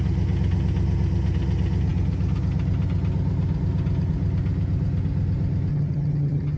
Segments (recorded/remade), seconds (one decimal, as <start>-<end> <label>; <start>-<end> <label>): 0.0-5.7 recorded; 5.7-6.6 remade